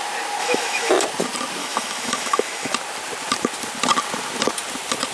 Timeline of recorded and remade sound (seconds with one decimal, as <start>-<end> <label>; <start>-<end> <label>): 0.0-0.4 recorded; 0.4-0.9 remade; 0.9-1.6 recorded; 1.6-2.7 remade; 2.7-5.1 recorded